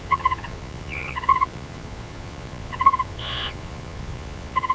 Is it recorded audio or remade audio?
remade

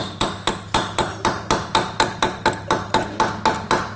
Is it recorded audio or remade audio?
recorded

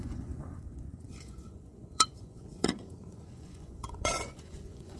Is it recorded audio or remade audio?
remade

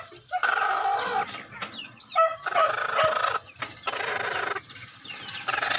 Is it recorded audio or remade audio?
recorded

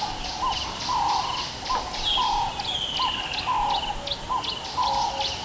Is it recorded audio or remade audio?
recorded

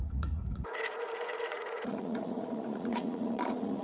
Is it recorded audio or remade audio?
remade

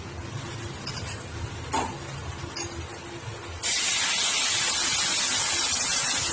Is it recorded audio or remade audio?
recorded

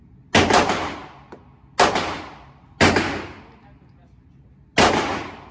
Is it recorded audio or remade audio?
recorded